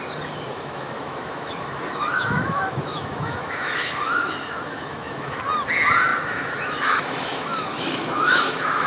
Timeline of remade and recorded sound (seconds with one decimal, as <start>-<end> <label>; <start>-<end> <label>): 0.0-0.5 recorded; 0.5-5.4 remade; 5.4-6.1 recorded; 6.1-8.9 remade